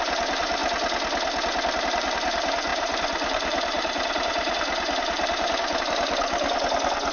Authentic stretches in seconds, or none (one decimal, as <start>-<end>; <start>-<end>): 0.6-1.8